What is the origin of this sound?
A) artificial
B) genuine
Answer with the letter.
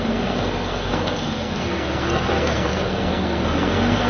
A